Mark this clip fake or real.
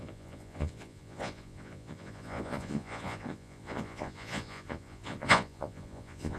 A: fake